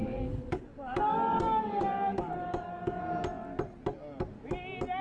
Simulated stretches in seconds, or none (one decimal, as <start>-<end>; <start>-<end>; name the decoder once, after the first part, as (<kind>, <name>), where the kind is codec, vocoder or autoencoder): 0.0-3.0 (codec, DAC)